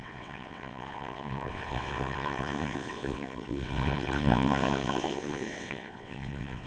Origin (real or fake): fake